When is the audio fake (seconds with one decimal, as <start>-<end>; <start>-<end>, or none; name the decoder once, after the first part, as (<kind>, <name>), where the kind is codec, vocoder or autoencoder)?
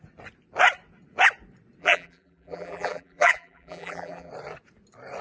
1.8-4.3 (vocoder, BigVGAN v2)